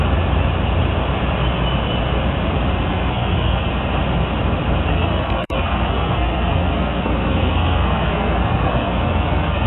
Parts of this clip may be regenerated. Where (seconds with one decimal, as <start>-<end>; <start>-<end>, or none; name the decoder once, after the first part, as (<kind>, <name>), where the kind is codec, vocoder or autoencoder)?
2.9-3.7 (codec, SNAC); 4.9-9.7

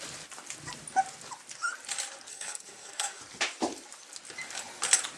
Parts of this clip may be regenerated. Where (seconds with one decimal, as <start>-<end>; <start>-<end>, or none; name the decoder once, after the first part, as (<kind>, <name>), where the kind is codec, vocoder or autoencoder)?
2.3-3.2 (codec, SNAC)

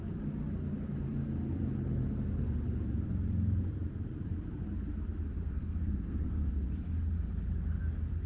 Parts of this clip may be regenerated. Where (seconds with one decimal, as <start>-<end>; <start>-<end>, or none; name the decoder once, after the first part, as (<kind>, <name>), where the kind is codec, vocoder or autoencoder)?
5.4-6.5 (codec, SNAC)

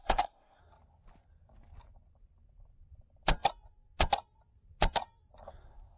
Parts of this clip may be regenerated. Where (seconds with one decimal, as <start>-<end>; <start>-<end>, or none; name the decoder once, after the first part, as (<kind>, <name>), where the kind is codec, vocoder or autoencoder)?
0.0-0.6 (codec, SNAC)